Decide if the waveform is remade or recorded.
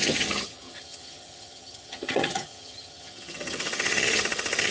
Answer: remade